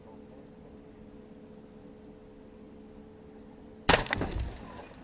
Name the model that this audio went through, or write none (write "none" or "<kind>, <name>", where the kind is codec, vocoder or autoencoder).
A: none